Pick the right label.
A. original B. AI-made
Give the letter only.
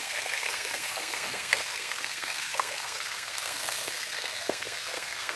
B